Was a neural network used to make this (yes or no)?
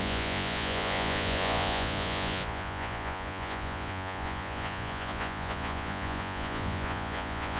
yes